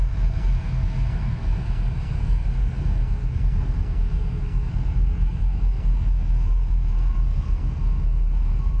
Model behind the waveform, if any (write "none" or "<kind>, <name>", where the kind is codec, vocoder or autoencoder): codec, SNAC